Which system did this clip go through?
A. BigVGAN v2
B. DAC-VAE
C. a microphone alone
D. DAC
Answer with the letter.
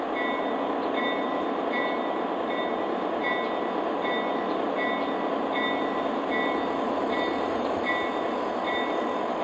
C